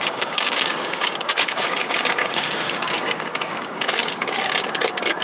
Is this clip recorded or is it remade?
remade